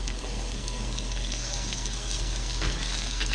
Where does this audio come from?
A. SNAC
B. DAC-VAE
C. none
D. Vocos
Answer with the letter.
A